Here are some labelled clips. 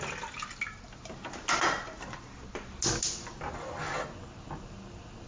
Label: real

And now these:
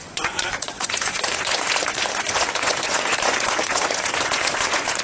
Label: fake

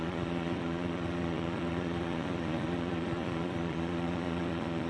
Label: fake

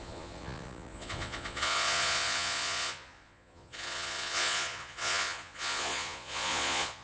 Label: fake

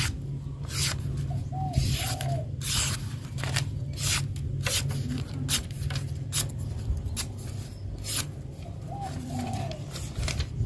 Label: real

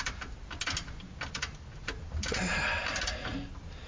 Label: real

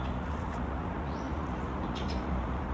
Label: fake